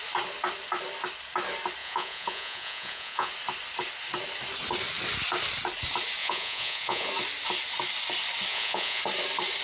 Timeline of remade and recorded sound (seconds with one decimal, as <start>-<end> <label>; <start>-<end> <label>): 0.0-1.8 recorded; 1.8-3.3 remade; 3.3-6.2 recorded; 6.2-7.1 remade; 7.1-8.5 recorded; 8.5-9.0 remade; 9.0-9.6 recorded